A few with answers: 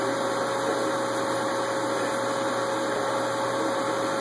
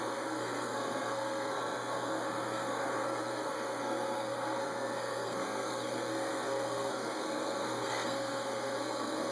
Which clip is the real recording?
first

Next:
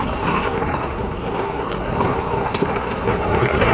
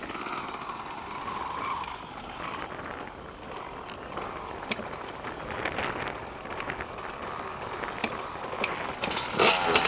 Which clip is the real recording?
second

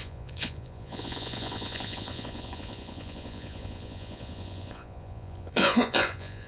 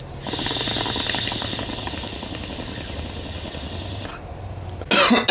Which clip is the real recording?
second